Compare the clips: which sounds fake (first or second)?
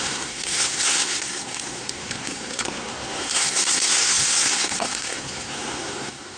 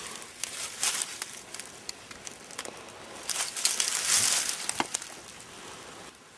first